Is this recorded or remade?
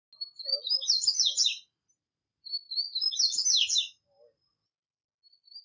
recorded